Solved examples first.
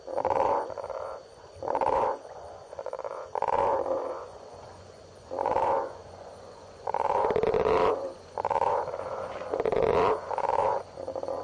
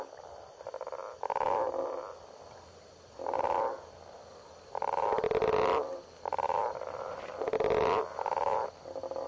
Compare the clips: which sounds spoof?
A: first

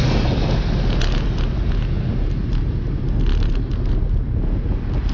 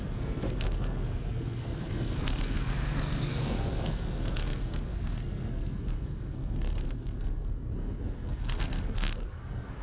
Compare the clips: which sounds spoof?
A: second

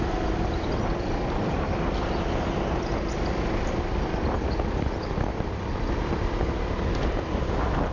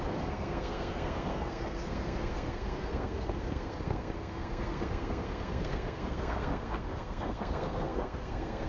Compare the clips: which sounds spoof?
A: second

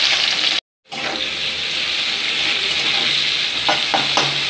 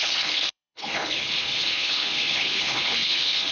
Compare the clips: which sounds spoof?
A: second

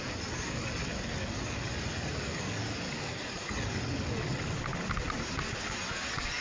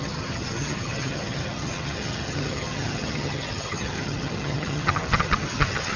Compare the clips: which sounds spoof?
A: second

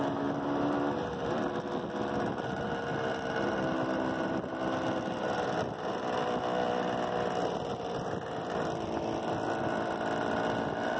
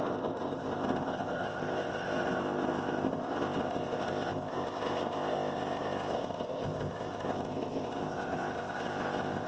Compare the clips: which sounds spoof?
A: second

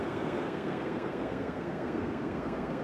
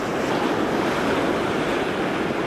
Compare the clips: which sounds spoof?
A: first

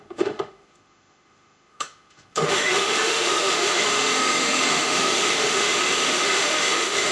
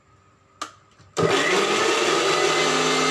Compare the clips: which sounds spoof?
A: first